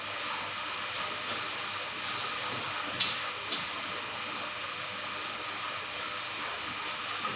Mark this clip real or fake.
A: real